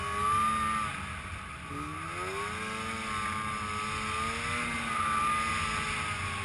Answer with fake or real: real